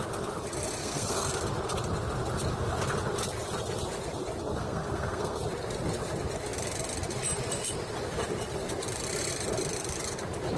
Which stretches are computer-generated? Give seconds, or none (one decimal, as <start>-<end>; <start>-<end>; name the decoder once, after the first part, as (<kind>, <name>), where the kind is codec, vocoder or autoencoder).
0.8-1.3 (codec, SNAC); 4.5-5.4